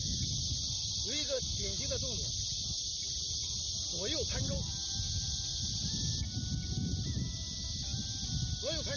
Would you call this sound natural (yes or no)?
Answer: yes